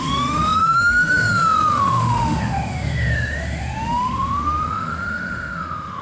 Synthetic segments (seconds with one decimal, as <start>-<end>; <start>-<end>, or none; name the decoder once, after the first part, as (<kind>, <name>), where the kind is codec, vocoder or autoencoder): 0.0-6.0 (autoencoder, DAC-VAE)

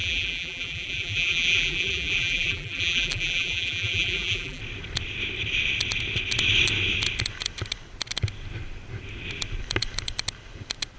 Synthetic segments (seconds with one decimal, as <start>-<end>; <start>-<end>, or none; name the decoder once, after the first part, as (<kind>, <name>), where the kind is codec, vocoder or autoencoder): 0.0-4.6 (vocoder, BigVGAN v2)